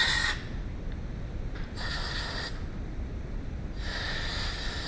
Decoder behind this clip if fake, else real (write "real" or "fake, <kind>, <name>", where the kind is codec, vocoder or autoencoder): real